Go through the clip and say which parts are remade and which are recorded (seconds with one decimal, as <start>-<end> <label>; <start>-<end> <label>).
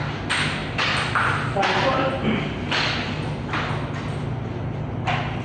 0.0-5.4 recorded